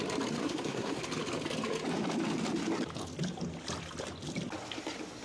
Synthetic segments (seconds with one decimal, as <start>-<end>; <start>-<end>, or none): 0.4-1.0